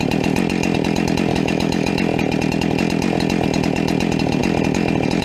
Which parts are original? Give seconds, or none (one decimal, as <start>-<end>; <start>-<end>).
0.0-1.3; 1.9-5.2